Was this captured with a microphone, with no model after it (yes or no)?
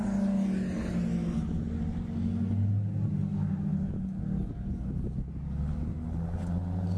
yes